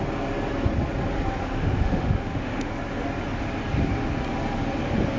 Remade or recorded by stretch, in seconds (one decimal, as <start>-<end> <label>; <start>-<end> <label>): 0.0-1.4 recorded; 1.4-2.7 remade; 2.7-5.2 recorded